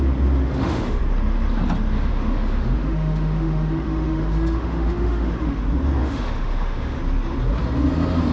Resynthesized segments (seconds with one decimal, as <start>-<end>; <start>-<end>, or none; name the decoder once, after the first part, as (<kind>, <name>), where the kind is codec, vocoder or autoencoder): 0.5-1.0 (autoencoder, DAC-VAE); 2.1-5.6; 6.0-7.0